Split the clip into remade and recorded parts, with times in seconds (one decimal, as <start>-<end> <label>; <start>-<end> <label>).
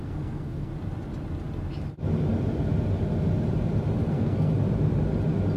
0.0-0.7 remade; 0.7-4.1 recorded; 4.1-4.5 remade; 4.5-5.6 recorded